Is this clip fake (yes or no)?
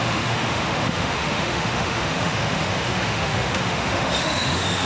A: yes